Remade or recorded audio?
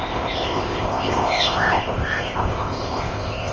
remade